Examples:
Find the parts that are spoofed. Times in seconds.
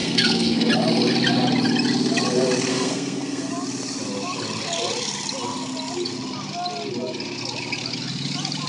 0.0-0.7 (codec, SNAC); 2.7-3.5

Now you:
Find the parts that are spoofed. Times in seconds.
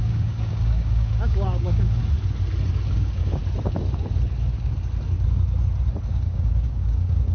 0.0-2.0 (codec, DAC); 2.9-3.4; 6.1-7.3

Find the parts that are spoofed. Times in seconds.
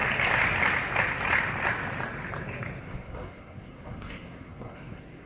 2.8-5.3 (codec, SNAC)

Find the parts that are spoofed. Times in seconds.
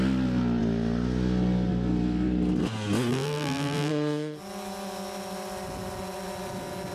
3.1-3.9 (vocoder, BigVGAN v2)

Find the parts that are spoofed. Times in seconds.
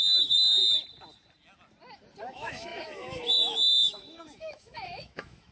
0.0-0.6 (autoencoder, DAC-VAE); 2.3-5.5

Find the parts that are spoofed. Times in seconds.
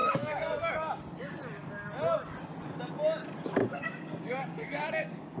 0.0-1.0 (codec, DAC); 3.6-5.4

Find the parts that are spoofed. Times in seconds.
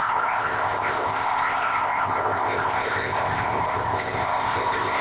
0.0-5.0 (codec, ZipCodec)